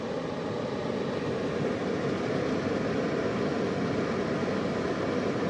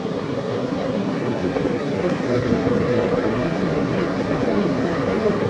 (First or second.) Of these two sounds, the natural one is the first